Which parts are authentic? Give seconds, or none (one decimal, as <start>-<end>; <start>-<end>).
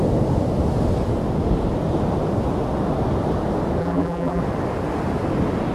0.0-3.8; 4.4-5.7